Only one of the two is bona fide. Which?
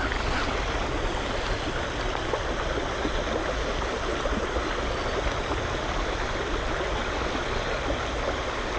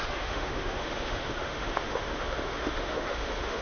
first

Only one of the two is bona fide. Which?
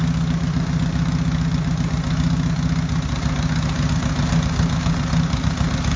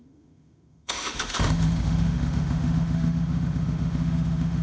first